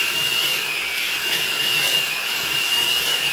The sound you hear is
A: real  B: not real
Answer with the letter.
B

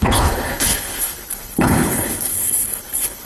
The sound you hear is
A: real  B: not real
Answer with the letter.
B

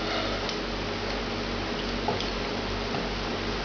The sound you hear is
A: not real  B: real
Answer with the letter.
B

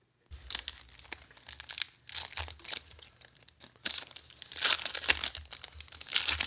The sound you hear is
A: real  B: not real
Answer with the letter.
A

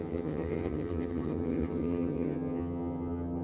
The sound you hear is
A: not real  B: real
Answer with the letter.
A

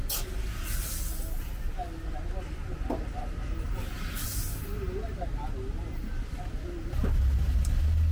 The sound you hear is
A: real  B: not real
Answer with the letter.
A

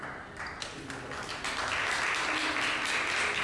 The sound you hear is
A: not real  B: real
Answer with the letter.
B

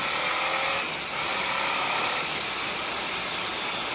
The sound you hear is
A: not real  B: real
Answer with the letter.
B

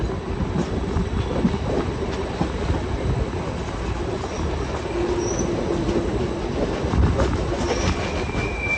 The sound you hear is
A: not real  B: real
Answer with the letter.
B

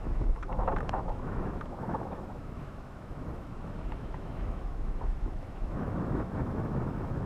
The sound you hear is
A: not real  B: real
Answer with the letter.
A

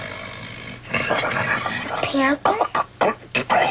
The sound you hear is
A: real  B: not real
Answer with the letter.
A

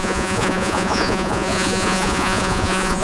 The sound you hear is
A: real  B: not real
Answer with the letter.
B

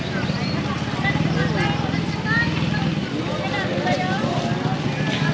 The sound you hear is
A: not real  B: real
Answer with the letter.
B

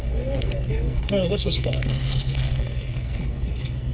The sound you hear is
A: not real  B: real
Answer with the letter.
A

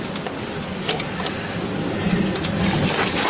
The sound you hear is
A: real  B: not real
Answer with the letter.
A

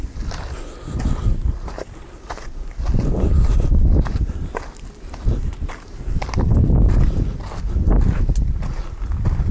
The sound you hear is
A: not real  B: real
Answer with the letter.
B